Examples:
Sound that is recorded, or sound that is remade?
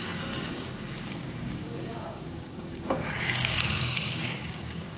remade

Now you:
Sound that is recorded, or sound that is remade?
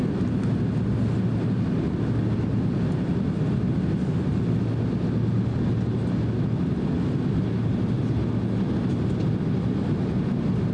recorded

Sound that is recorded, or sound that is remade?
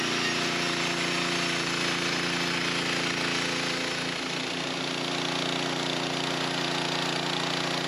recorded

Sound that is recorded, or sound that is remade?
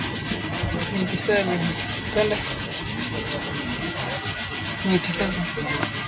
recorded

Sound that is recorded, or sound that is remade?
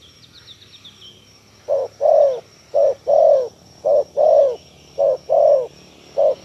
recorded